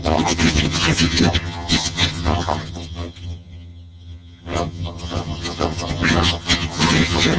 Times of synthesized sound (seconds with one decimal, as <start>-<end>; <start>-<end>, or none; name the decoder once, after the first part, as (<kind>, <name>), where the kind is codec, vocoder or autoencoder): 0.0-7.4 (vocoder, HiFi-GAN)